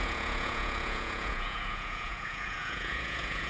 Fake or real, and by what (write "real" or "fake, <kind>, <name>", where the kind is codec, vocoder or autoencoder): fake, vocoder, Vocos